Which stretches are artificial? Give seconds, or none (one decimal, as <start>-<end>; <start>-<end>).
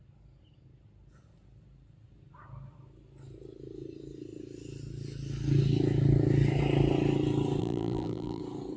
7.6-8.4